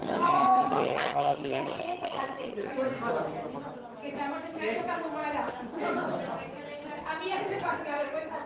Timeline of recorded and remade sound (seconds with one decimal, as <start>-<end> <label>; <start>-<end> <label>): 0.0-2.7 remade; 2.7-8.5 recorded